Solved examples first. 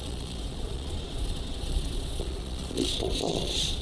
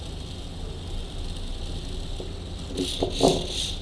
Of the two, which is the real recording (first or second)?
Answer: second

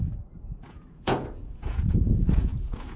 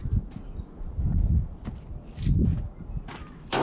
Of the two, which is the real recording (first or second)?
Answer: second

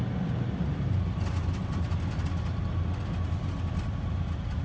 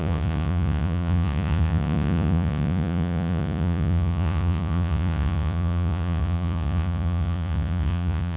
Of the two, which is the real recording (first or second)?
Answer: first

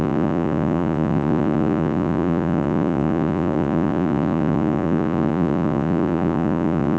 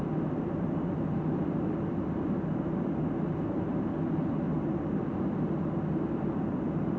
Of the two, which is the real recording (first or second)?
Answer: second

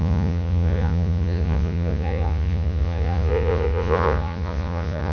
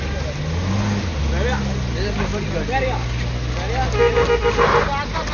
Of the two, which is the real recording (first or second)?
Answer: second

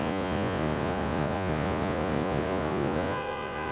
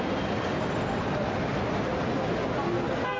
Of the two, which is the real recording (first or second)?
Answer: second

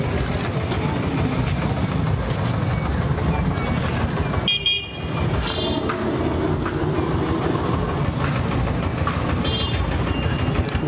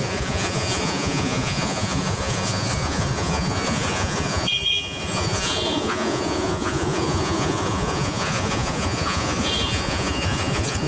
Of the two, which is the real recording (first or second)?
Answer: first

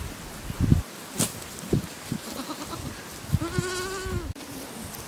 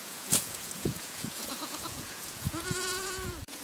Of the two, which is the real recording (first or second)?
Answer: first